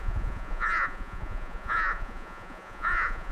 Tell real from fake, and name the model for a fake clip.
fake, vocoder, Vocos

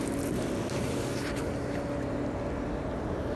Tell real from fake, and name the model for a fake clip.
real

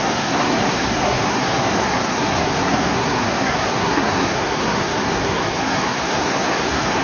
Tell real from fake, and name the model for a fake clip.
fake, codec, SNAC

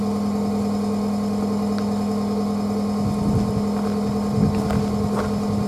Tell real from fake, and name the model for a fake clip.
real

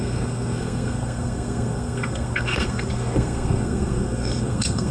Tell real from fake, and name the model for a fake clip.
fake, codec, SNAC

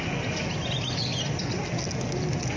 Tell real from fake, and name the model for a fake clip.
real